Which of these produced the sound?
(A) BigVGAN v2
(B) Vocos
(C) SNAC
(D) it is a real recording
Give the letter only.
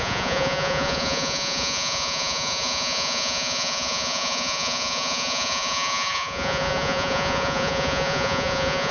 B